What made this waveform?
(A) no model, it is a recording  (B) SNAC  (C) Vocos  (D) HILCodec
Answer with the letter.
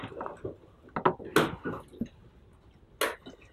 A